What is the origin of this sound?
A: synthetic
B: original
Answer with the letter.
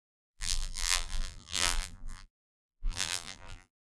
A